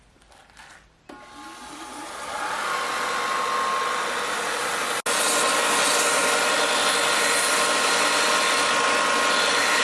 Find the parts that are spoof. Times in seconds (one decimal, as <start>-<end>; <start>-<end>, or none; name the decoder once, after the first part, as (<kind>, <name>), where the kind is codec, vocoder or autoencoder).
none